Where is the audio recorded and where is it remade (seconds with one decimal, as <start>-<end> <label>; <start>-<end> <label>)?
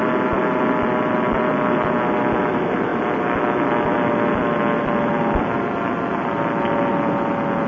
0.0-7.7 recorded